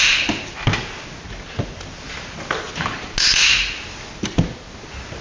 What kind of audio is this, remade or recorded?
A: recorded